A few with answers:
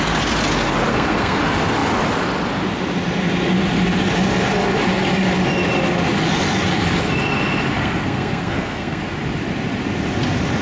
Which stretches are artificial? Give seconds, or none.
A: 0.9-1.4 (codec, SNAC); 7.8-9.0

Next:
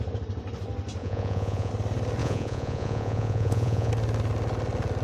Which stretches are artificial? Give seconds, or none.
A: 1.0-1.7 (vocoder, Vocos); 2.2-3.9